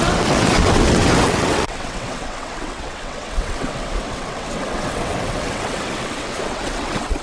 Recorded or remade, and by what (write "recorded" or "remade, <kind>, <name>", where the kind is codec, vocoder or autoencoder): remade, vocoder, WaveNeXt